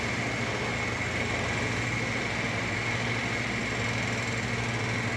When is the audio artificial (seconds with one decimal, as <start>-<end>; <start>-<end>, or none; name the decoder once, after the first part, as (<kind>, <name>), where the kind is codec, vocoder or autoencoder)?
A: none